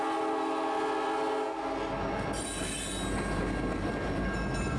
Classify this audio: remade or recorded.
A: recorded